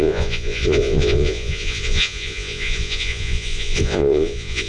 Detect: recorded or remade remade